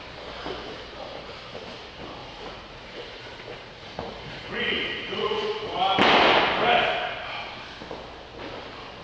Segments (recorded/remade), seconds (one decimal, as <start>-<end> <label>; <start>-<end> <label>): 0.0-2.2 recorded; 2.2-5.8 remade; 5.8-9.0 recorded